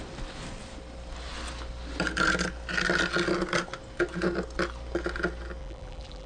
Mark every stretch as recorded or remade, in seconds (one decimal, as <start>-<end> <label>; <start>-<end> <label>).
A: 0.0-5.6 recorded; 5.6-6.3 remade